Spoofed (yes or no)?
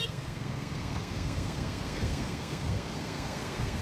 yes